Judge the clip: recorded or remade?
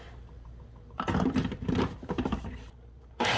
remade